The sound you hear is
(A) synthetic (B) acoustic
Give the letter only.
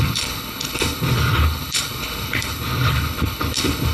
A